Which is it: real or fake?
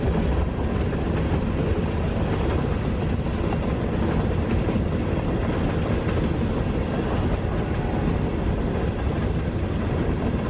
real